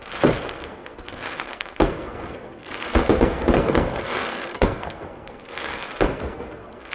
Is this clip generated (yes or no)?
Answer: yes